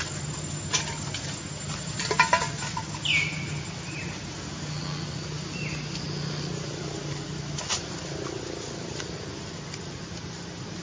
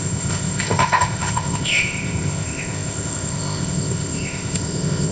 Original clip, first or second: first